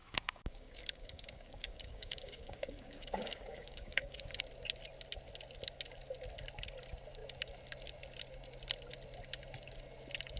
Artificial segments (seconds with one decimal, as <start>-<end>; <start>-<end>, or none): 0.0-4.4